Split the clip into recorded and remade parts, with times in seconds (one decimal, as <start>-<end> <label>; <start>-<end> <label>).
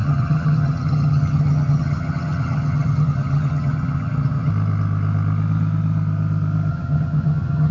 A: 0.0-4.5 remade; 4.5-6.7 recorded; 6.7-7.7 remade